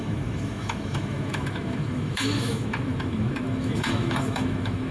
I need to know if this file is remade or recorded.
remade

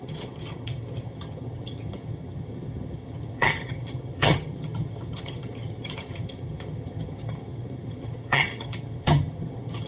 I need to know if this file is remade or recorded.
remade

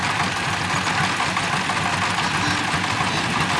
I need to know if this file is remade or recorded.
recorded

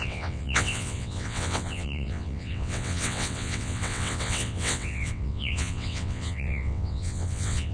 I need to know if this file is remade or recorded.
remade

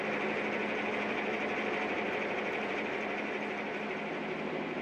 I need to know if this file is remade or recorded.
recorded